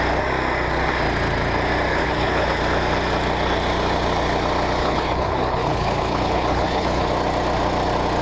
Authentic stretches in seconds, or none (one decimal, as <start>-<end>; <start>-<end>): 0.0-1.9; 2.6-4.8; 7.1-8.2